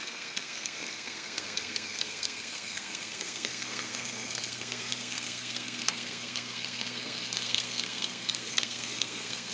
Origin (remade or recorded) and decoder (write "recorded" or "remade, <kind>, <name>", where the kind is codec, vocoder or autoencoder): remade, codec, SNAC